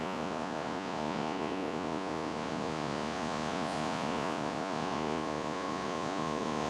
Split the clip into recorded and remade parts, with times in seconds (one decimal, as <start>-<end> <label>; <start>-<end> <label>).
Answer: 0.0-6.7 remade